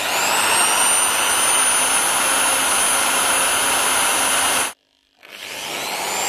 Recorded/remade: recorded